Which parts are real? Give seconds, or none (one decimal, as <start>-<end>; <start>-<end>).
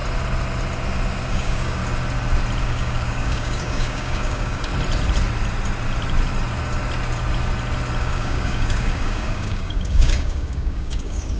0.0-1.3; 1.8-2.6; 4.7-8.0